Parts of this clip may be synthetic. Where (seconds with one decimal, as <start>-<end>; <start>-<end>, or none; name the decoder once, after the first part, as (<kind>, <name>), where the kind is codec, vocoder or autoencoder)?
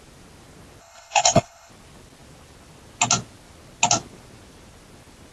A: 0.8-1.7 (codec, HILCodec)